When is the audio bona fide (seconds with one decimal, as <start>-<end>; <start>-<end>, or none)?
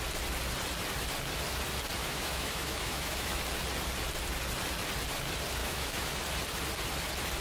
0.0-2.0; 3.4-5.6; 6.1-7.4